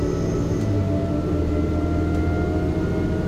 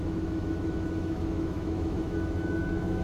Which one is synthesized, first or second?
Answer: second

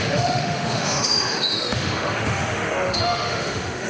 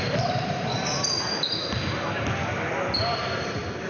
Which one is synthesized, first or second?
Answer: first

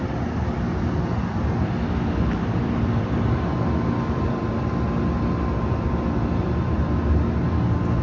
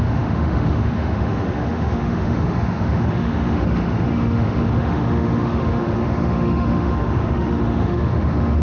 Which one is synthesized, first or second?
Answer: second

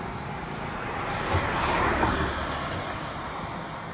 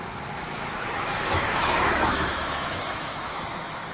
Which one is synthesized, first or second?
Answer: second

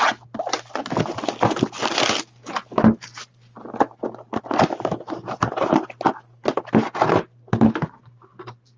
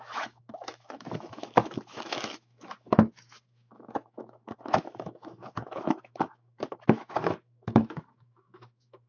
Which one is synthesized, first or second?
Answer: second